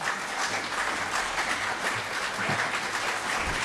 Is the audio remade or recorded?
recorded